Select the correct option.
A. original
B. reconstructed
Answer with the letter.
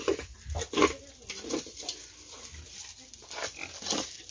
A